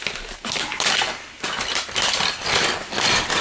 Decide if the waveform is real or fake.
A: real